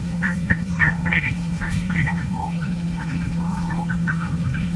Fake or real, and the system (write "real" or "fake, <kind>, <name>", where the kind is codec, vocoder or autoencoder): fake, codec, SNAC